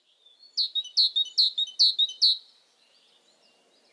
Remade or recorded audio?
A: recorded